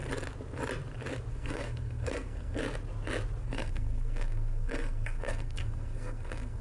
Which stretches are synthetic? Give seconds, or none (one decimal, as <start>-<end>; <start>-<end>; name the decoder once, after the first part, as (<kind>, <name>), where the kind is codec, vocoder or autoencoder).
1.3-2.6 (codec, SNAC); 3.4-6.6